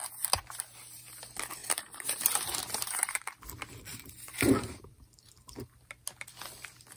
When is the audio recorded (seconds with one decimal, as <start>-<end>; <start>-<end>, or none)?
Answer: 0.0-1.6; 3.3-3.9; 5.9-7.0